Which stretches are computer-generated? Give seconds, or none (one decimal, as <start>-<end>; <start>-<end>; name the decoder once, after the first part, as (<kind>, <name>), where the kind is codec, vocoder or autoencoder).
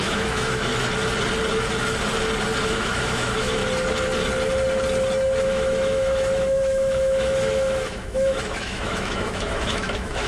0.0-0.7 (autoencoder, DAC-VAE); 2.6-3.6; 5.4-10.3